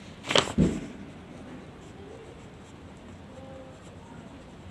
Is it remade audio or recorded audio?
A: recorded